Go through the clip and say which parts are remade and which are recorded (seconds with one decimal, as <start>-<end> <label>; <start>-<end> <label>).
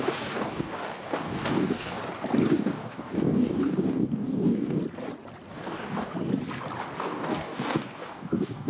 0.0-2.0 remade; 2.0-2.5 recorded; 2.5-4.8 remade; 4.8-5.5 recorded; 5.5-6.1 remade; 6.1-7.0 recorded; 7.0-8.7 remade